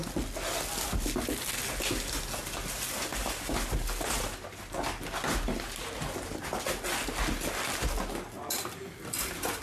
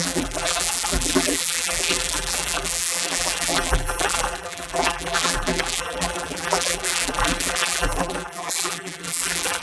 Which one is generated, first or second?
second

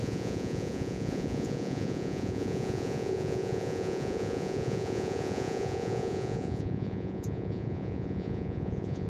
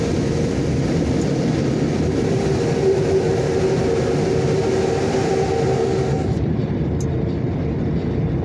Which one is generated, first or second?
first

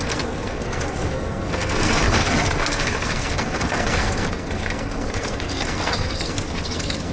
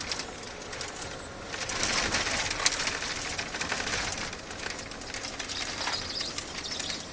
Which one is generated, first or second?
first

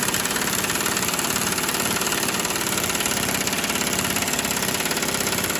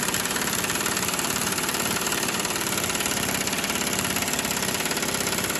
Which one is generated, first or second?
second